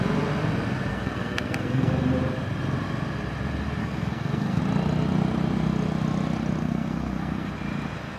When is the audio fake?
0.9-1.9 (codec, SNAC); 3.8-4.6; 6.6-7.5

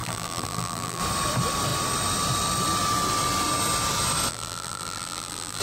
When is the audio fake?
0.0-1.0 (vocoder, BigVGAN v2); 4.3-5.6

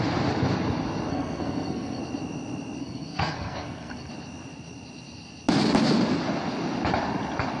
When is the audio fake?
1.1-2.0 (codec, SNAC); 2.8-4.1

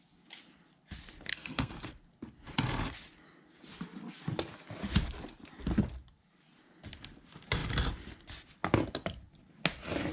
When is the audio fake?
1.3-1.9 (codec, SNAC)

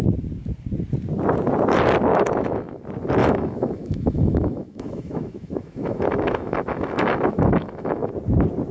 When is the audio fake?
2.1-2.8 (autoencoder, DAC-VAE); 3.2-8.1

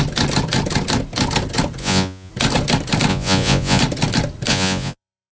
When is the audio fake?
1.8-2.3 (vocoder, Vocos); 3.1-3.8; 4.5-5.3

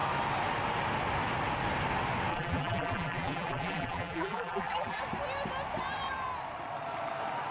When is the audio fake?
2.3-5.0 (vocoder, BigVGAN v2)

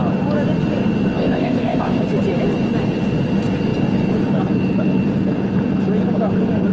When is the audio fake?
1.2-2.0 (codec, ZipCodec)